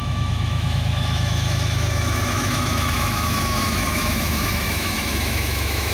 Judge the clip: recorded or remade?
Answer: remade